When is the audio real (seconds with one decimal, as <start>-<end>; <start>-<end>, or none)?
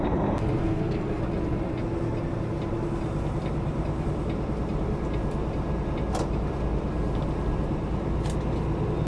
0.0-0.6; 1.2-9.1